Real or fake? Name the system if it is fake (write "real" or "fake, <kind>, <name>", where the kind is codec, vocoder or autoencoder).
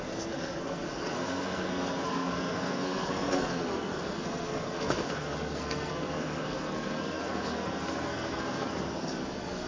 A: fake, codec, SNAC